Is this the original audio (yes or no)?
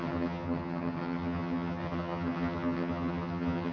no